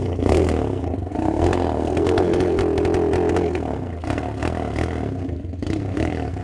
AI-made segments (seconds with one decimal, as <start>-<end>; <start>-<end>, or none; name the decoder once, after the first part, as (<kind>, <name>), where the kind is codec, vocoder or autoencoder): 0.0-2.6 (codec, SNAC); 3.3-6.4